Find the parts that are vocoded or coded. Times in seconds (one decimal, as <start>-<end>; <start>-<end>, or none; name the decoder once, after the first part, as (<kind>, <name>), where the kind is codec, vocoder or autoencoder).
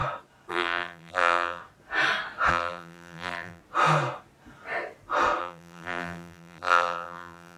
0.5-1.6 (vocoder, BigVGAN v2); 2.5-3.6; 5.4-7.6